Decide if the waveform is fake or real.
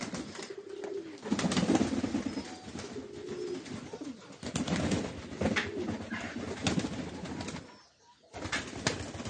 real